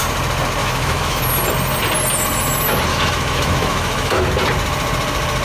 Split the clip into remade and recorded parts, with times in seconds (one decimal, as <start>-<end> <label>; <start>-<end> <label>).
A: 0.0-0.6 recorded; 0.6-1.2 remade; 1.2-2.9 recorded; 2.9-4.2 remade; 4.2-5.4 recorded